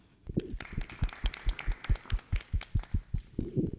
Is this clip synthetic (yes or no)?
no